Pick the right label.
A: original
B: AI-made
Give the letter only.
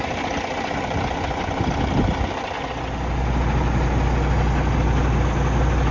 A